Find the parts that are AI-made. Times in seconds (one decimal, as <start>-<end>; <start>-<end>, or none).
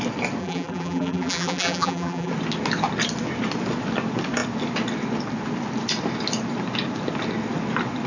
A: 0.4-2.3